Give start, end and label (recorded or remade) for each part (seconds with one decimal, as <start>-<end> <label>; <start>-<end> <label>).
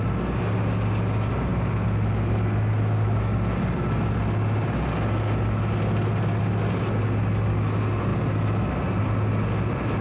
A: 0.0-10.0 recorded